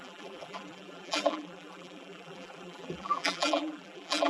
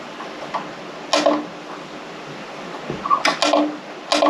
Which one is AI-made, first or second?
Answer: first